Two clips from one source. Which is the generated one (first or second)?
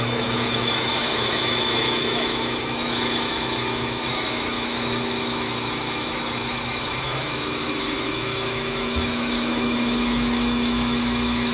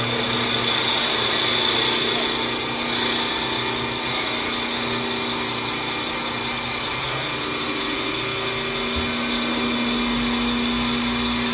first